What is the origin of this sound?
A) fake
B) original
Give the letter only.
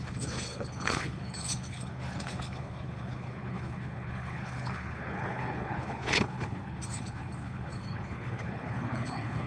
A